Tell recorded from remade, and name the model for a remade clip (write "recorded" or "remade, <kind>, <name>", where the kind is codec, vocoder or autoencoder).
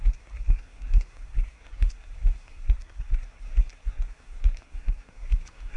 remade, codec, SNAC